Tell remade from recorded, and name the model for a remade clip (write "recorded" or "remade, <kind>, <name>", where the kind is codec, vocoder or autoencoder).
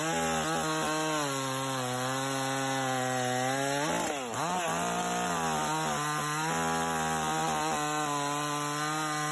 recorded